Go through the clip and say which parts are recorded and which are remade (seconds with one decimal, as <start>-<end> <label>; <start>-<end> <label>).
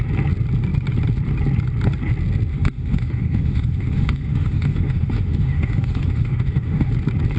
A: 0.0-2.5 recorded; 2.5-6.9 remade; 6.9-7.4 recorded